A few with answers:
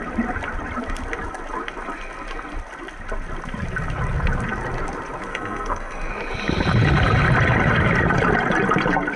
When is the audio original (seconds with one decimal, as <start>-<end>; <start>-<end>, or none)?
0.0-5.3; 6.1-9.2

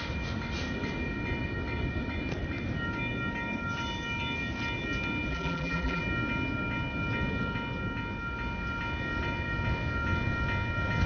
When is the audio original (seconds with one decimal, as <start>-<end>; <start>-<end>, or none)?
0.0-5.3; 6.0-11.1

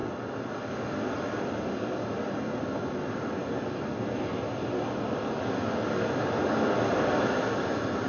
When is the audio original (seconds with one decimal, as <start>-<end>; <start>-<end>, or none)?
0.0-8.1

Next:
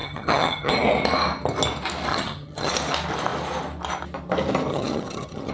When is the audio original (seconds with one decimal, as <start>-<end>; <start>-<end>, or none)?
0.7-2.1; 2.7-4.7

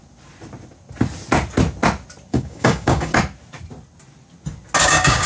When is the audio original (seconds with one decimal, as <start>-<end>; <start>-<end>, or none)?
0.0-2.3; 3.1-4.8

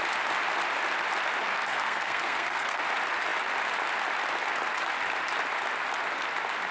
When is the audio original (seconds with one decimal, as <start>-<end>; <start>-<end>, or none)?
0.0-1.4; 2.8-6.7